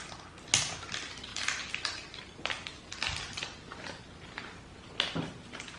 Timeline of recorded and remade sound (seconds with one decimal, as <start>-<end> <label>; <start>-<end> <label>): 0.0-1.3 recorded; 1.3-3.8 remade; 3.8-5.8 recorded